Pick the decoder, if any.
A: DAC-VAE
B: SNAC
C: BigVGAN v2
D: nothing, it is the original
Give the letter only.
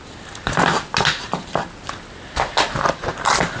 D